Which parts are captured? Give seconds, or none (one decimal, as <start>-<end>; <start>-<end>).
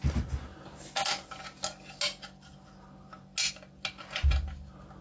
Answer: 0.0-5.0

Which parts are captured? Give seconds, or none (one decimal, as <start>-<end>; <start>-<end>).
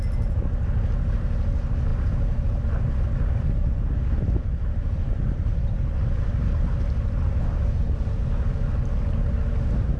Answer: 0.0-10.0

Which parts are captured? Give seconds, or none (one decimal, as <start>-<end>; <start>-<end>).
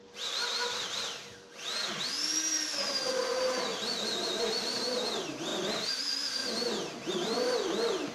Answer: 0.0-8.1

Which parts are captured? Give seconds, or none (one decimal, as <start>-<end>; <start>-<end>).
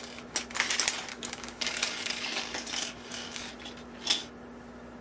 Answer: 0.0-1.1; 3.5-5.0